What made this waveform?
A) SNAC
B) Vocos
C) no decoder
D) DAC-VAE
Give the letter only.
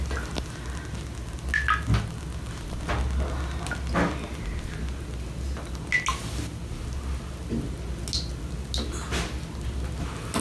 C